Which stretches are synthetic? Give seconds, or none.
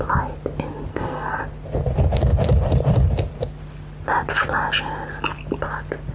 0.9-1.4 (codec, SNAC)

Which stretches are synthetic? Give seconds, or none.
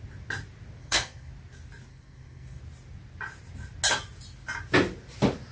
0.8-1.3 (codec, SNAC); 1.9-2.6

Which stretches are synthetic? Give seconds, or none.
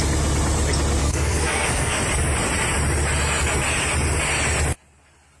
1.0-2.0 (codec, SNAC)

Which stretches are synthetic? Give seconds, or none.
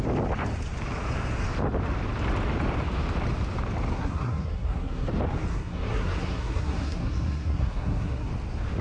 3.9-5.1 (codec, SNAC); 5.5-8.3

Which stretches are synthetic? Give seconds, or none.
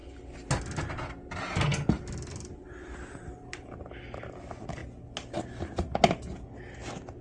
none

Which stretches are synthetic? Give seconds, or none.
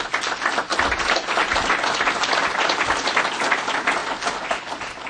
none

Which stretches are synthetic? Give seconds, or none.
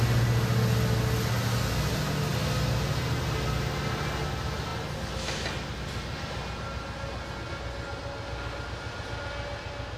none